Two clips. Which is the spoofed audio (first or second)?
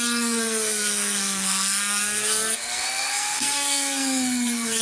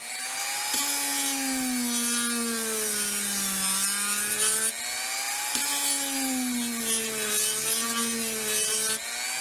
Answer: first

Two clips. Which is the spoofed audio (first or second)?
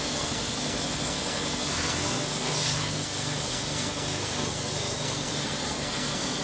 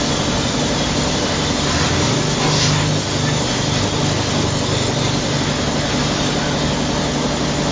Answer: first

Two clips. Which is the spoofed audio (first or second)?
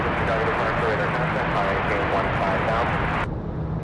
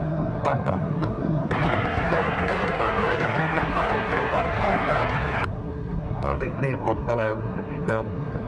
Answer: second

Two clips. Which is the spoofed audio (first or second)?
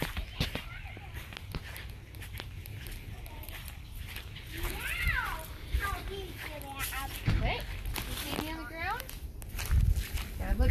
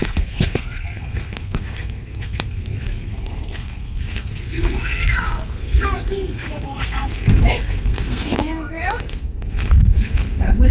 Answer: second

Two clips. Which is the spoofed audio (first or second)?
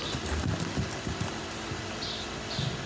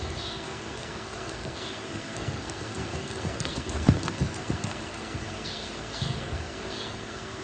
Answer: second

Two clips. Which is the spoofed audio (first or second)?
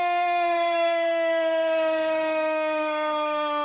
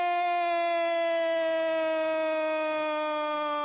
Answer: first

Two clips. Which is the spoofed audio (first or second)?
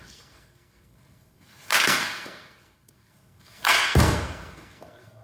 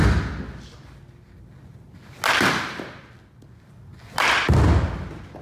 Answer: first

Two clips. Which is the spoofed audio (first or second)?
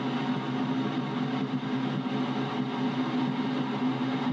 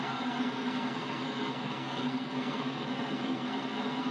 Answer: second